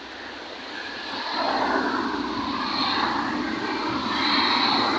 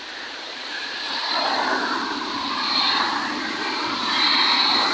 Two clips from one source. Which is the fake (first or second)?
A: second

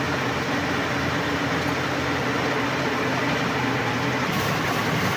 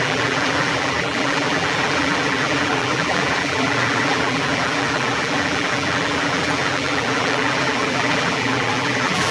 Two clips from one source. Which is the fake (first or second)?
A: second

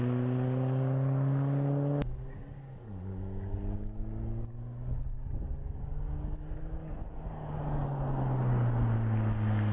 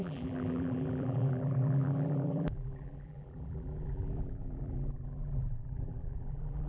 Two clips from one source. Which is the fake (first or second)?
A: second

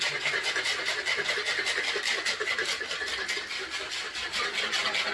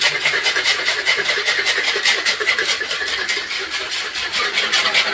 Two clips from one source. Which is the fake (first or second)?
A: second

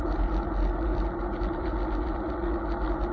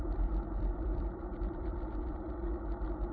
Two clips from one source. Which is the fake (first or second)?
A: second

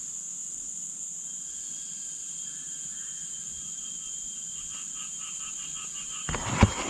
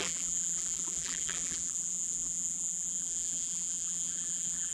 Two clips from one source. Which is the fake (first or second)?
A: second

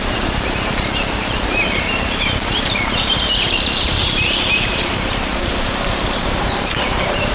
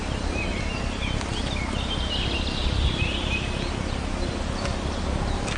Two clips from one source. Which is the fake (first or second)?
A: first